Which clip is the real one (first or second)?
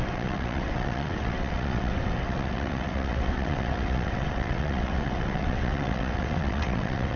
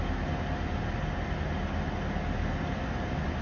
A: second